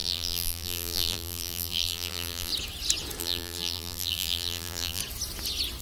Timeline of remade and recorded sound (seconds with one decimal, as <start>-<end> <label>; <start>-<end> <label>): 0.0-2.5 remade; 2.5-3.2 recorded; 3.2-5.0 remade; 5.0-5.8 recorded

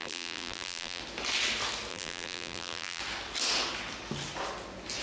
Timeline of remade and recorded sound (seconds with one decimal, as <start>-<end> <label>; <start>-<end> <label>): 0.0-1.0 remade; 1.0-1.9 recorded; 1.9-3.0 remade; 3.0-5.0 recorded

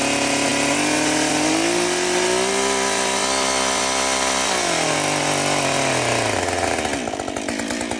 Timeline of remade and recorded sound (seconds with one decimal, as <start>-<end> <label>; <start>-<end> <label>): 0.0-8.0 recorded